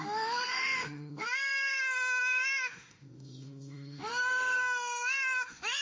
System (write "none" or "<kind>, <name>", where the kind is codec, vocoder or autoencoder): autoencoder, DAC-VAE